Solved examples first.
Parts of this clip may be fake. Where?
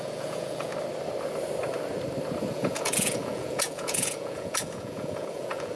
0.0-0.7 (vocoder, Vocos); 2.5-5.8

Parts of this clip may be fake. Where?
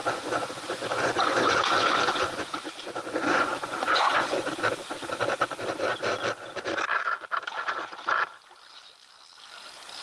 0.0-4.5 (vocoder, Vocos)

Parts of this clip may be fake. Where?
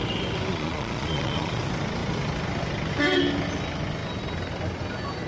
0.5-1.6 (vocoder, Vocos)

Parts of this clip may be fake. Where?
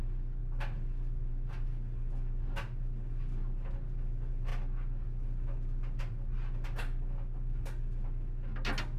none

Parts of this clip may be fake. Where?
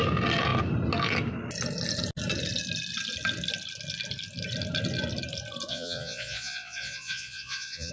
5.7-7.9 (vocoder, Vocos)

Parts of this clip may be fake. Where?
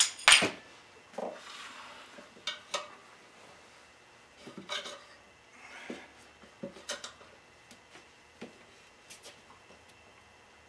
none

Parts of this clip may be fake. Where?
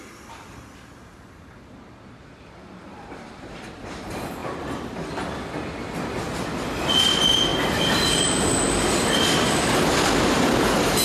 none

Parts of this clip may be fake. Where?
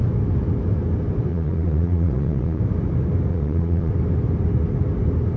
1.3-2.6 (vocoder, Vocos); 3.3-3.9